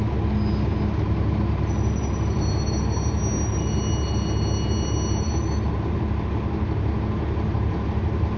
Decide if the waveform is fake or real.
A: real